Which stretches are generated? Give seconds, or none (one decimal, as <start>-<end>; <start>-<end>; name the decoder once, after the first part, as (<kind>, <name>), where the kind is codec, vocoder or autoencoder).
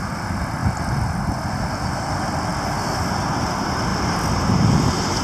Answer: 0.0-2.5 (vocoder, BigVGAN v2); 3.4-3.9